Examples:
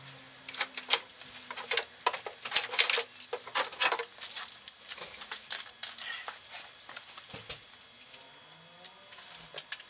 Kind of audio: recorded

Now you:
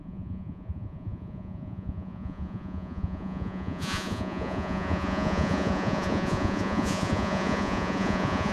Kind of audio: remade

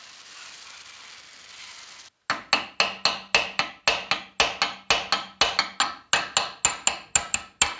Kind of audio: recorded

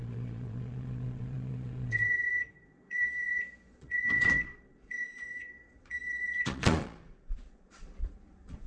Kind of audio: remade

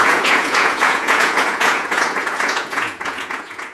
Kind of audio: remade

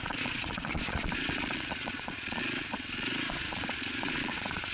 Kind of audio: remade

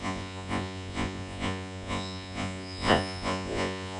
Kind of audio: remade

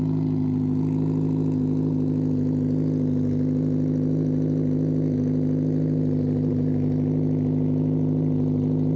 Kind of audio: recorded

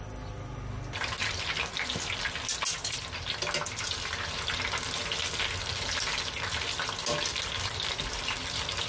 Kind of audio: recorded